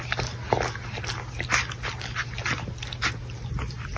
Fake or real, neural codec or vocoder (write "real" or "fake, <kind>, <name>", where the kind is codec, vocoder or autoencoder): real